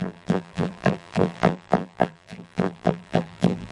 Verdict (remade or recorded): remade